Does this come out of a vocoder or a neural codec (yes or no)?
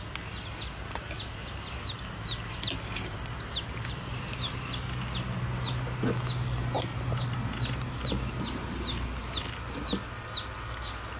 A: no